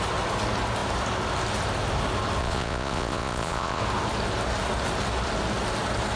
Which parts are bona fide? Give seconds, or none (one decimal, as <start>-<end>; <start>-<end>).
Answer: 0.0-2.4; 3.8-6.2